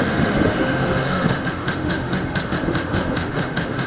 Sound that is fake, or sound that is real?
fake